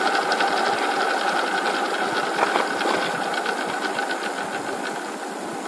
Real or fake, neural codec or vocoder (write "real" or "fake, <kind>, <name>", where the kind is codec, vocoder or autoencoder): real